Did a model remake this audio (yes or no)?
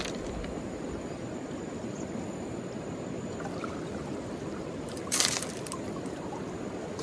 yes